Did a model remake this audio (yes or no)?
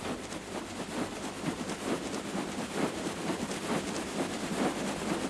yes